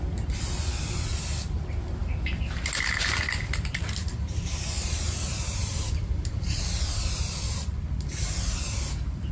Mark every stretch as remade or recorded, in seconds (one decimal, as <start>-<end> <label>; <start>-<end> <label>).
0.0-2.0 recorded; 2.0-2.6 remade; 2.6-4.0 recorded; 4.0-7.9 remade; 7.9-9.3 recorded